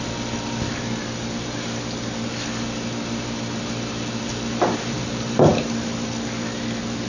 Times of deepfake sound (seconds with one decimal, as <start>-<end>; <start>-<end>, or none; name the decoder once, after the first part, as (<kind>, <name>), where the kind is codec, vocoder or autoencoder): none